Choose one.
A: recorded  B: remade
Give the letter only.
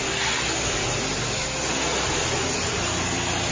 A